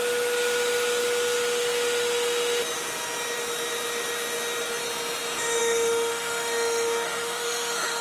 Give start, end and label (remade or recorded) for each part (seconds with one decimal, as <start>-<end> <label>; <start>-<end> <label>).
0.0-5.6 recorded; 5.6-8.0 remade